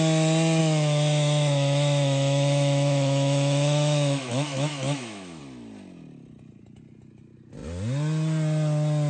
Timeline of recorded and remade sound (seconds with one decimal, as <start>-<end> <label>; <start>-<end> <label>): 0.0-0.6 recorded; 0.6-5.4 remade; 5.4-9.1 recorded